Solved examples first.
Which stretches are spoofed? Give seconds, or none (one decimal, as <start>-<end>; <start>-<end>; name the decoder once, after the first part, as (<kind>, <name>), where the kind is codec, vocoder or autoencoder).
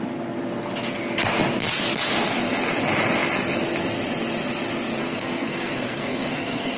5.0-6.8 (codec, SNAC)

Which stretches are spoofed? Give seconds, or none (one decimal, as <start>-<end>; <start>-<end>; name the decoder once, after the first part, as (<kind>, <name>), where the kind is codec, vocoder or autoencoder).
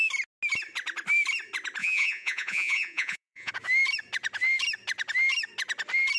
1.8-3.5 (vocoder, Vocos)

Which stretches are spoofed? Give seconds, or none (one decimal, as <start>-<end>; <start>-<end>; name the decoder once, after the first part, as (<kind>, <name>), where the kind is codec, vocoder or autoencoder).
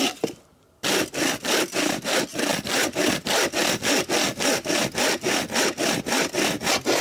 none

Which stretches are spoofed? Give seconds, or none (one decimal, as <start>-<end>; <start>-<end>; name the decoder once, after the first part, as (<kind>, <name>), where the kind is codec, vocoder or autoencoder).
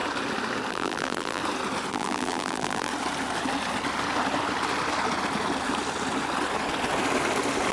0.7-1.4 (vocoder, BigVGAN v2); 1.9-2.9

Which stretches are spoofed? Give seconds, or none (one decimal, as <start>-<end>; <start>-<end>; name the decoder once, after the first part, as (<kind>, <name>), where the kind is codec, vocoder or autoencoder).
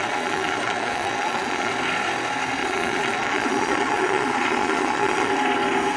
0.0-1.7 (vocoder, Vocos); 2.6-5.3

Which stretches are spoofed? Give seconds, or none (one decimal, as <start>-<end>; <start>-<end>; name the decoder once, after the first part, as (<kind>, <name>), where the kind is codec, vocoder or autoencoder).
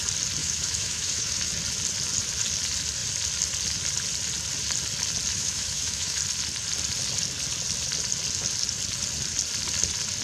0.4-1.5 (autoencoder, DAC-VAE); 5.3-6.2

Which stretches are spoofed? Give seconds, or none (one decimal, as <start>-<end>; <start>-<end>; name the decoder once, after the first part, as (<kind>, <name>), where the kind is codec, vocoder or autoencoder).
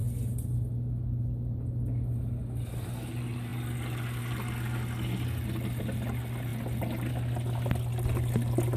none